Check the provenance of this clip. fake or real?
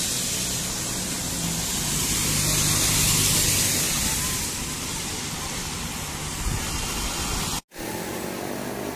real